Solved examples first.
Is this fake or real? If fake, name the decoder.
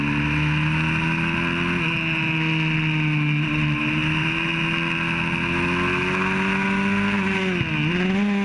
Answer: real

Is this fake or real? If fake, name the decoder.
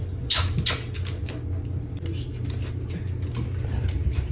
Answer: real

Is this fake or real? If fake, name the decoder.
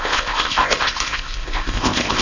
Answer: fake, codec, ZipCodec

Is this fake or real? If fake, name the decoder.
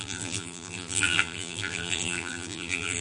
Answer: fake, vocoder, BigVGAN v2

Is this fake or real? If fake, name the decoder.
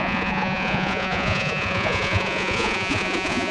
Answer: fake, vocoder, Vocos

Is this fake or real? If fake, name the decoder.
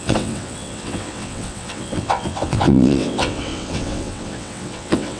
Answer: fake, vocoder, WaveNeXt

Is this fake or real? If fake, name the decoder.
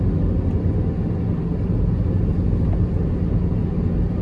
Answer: real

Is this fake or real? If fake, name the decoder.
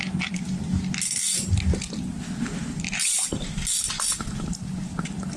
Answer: real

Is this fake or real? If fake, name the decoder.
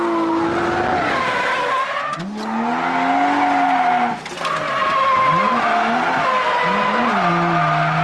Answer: real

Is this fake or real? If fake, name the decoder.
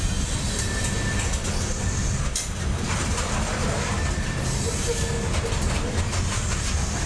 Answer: real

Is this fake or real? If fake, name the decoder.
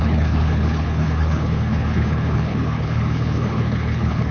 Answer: fake, codec, HILCodec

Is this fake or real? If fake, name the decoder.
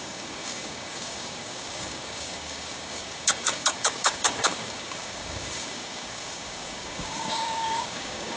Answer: fake, codec, DAC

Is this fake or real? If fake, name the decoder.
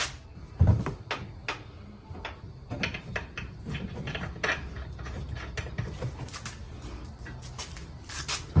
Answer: real